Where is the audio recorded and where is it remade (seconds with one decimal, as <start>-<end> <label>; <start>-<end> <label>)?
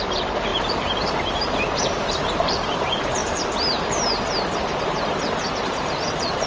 0.0-3.2 remade; 3.2-5.7 recorded; 5.7-6.5 remade